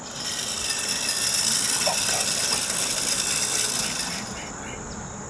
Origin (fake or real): real